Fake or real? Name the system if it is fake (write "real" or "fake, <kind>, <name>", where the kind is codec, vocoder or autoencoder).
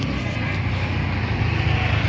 real